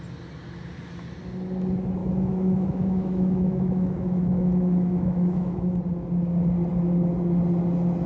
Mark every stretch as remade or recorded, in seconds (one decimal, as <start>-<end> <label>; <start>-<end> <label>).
0.0-2.0 recorded; 2.0-5.8 remade; 5.8-8.1 recorded